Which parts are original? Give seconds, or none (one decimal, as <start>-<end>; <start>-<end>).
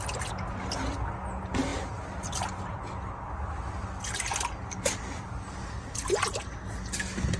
0.0-7.4